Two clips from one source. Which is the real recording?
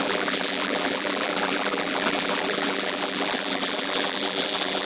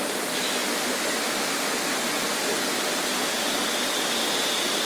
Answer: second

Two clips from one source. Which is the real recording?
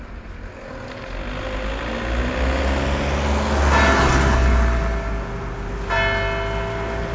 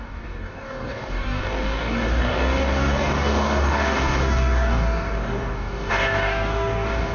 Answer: first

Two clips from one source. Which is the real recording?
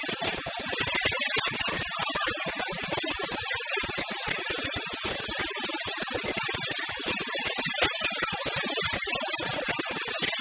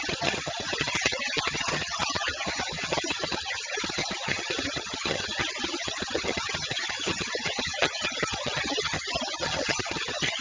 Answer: first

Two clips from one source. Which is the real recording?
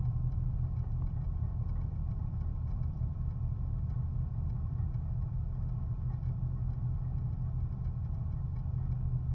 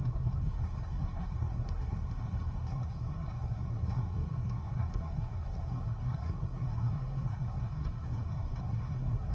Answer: first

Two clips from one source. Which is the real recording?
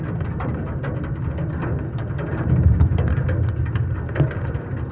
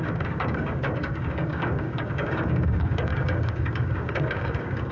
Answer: first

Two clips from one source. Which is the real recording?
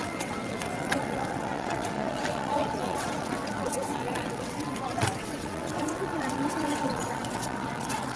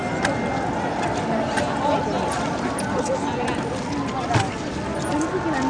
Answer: second